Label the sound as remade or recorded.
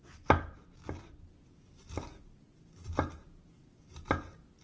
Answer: recorded